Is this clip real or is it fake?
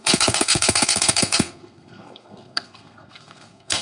fake